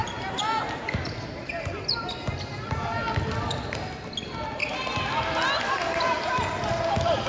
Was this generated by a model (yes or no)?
no